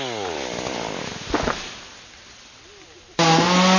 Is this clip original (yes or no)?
yes